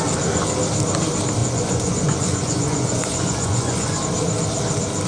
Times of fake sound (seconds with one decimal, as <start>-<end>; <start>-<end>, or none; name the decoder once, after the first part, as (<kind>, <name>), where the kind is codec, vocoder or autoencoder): 1.4-4.0 (vocoder, Vocos)